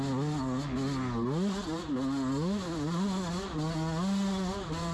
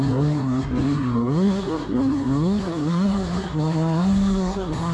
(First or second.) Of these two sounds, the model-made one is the second